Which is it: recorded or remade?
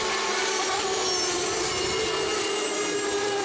recorded